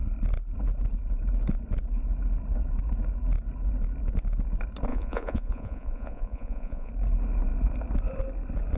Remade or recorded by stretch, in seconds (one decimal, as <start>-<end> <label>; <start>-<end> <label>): 0.0-4.9 recorded; 4.9-6.9 remade; 6.9-8.8 recorded